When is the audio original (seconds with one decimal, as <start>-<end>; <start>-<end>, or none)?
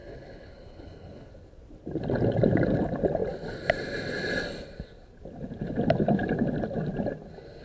1.3-7.6